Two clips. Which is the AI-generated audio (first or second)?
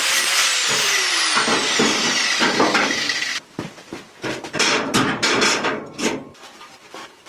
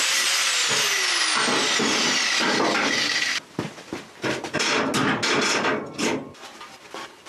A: first